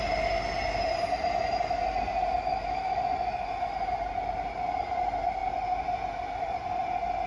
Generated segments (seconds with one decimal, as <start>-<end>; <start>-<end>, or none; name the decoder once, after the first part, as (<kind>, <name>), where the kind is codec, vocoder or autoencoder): 2.5-3.0 (autoencoder, DAC-VAE)